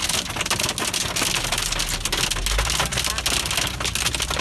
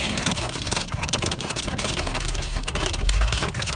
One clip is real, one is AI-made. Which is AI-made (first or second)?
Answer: second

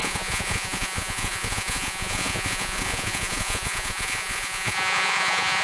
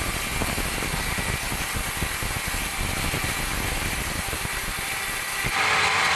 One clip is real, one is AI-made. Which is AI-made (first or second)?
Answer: first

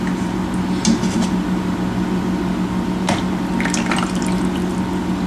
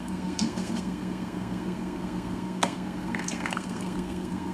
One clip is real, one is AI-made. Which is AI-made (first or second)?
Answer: second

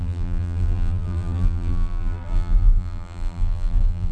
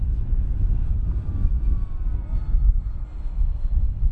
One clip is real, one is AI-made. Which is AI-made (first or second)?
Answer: first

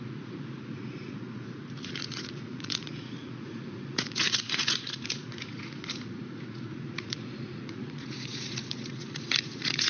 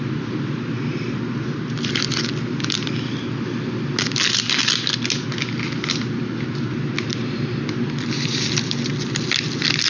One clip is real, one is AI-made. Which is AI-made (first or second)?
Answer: first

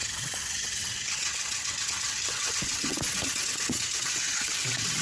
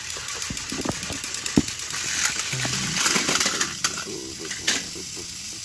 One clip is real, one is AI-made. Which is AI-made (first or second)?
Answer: first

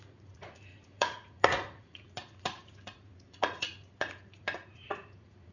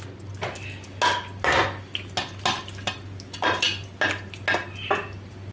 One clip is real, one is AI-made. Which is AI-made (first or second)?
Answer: first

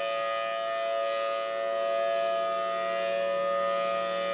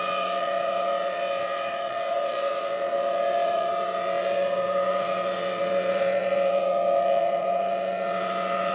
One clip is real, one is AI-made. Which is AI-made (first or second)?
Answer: second